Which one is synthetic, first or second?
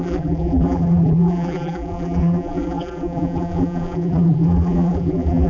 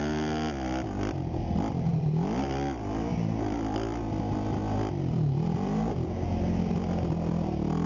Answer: first